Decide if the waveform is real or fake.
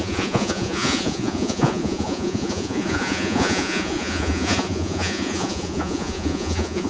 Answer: fake